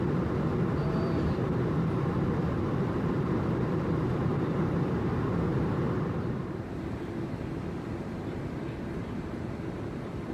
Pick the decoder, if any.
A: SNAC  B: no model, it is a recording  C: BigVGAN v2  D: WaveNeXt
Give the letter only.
C